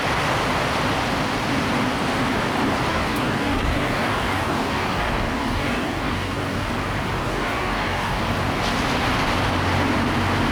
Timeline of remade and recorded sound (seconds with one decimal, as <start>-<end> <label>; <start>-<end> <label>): 0.0-2.9 recorded; 2.9-6.7 remade; 6.7-7.2 recorded; 7.2-8.2 remade; 8.2-10.5 recorded